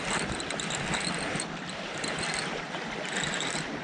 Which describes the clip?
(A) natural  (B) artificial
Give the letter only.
A